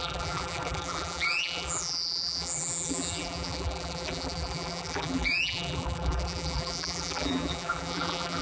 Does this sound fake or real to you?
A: fake